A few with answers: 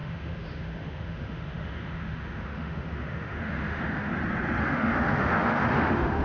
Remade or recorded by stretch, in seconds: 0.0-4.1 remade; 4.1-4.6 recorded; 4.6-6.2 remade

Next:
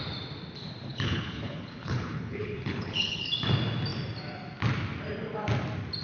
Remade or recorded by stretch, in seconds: 0.0-0.9 recorded; 0.9-3.3 remade; 3.3-6.0 recorded

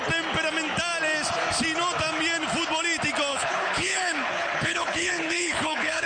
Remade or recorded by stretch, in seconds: 0.0-3.3 recorded; 3.3-6.1 remade